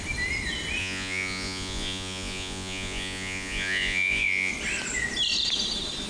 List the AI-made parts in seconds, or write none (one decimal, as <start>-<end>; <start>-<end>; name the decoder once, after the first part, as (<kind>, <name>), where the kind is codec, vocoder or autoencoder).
0.8-4.5 (vocoder, Vocos)